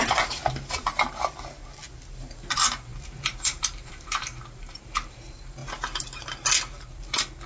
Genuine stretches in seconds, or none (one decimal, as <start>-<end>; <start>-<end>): 0.4-2.2; 5.6-7.5